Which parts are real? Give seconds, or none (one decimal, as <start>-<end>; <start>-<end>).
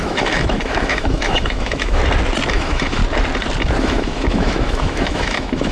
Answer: 2.0-2.5; 3.0-3.8